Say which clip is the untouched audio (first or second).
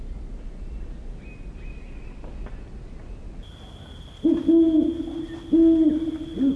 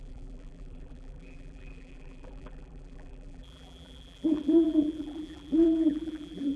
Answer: first